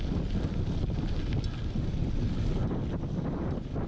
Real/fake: real